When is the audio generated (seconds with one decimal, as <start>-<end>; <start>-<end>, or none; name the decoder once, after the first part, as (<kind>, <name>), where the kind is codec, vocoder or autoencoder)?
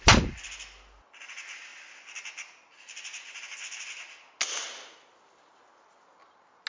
none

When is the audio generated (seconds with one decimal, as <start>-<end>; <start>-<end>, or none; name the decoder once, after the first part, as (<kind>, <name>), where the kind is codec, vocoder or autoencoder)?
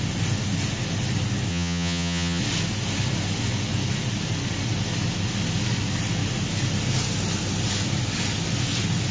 1.5-2.4 (vocoder, HiFi-GAN)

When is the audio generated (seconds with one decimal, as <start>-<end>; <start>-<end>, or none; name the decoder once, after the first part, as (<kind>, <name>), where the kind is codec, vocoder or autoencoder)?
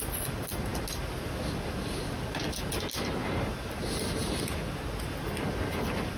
none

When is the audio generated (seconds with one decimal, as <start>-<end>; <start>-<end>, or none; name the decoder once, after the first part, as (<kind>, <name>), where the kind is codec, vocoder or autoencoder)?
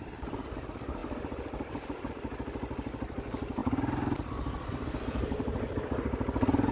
none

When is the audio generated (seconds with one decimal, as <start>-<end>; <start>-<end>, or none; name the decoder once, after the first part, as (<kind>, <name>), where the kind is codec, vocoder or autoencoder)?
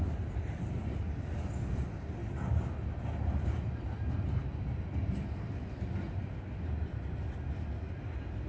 none